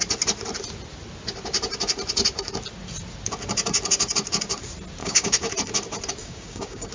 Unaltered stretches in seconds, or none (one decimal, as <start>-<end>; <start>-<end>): 0.0-5.0; 5.5-6.2